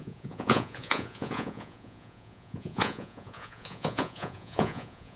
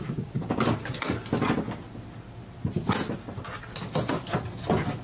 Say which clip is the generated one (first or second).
first